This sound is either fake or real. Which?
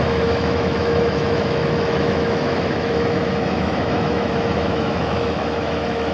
fake